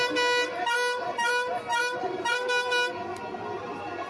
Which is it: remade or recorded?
recorded